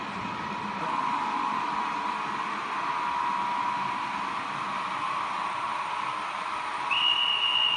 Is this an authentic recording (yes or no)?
yes